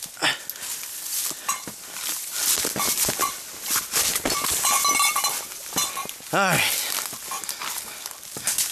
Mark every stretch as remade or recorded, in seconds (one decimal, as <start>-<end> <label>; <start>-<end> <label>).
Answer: 0.0-1.2 recorded; 1.2-5.4 remade; 5.4-8.7 recorded